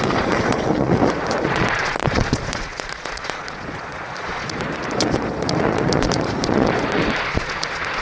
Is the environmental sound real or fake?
fake